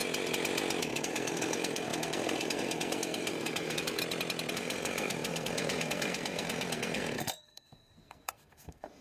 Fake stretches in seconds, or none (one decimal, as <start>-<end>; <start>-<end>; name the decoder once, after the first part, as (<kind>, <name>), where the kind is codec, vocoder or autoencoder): 0.8-4.0 (codec, SNAC); 4.5-9.0